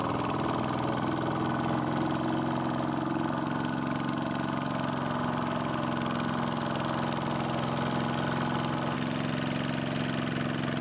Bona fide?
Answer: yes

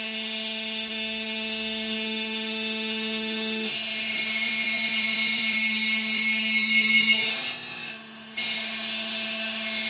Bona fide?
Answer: no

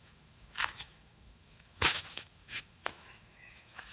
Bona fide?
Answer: no